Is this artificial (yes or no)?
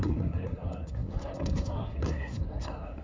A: yes